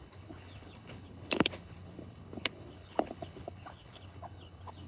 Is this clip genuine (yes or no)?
no